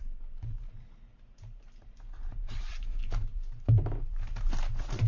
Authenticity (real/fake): fake